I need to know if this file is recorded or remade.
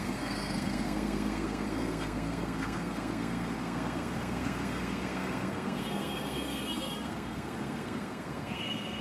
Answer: remade